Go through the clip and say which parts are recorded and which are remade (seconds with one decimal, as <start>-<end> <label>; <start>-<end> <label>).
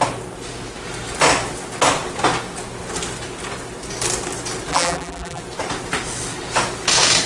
0.0-4.7 recorded; 4.7-5.4 remade; 5.4-7.3 recorded